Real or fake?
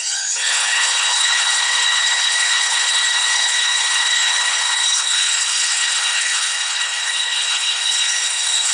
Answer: fake